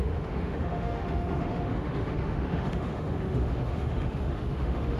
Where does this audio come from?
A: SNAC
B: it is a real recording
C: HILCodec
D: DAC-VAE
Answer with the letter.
D